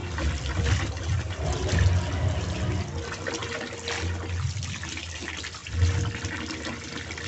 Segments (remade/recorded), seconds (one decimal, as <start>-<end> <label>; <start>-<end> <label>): 0.0-7.3 recorded